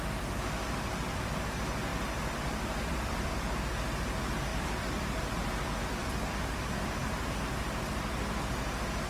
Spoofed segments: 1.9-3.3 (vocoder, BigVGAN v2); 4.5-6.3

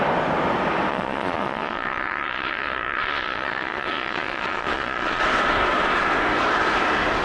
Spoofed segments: 0.9-5.2 (vocoder, Vocos)

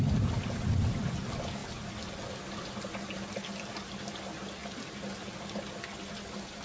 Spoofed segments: none

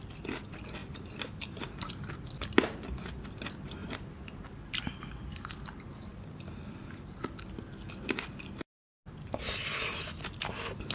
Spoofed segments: 0.8-2.1 (vocoder, BigVGAN v2); 3.8-4.8

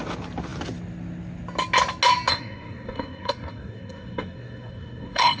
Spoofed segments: 2.3-5.4 (codec, SNAC)

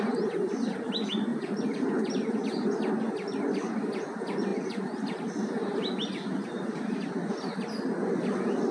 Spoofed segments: 1.3-1.9 (vocoder, BigVGAN v2)